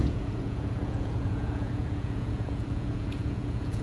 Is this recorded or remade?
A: remade